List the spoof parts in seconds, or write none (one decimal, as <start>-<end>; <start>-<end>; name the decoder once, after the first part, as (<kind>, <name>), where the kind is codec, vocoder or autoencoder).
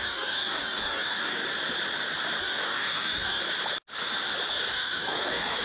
0.0-1.4 (codec, DAC); 2.4-3.4; 4.5-5.6